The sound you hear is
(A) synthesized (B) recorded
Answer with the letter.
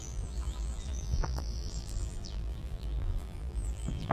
A